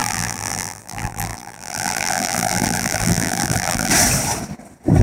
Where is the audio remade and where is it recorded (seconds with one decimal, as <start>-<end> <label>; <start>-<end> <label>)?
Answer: 0.0-3.9 remade; 3.9-5.0 recorded